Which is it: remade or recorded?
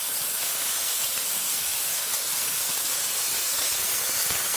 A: remade